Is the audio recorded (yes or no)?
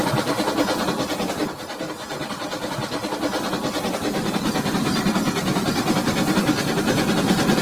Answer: yes